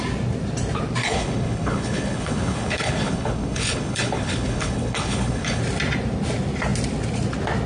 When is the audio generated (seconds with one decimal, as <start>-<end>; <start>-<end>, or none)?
1.0-5.6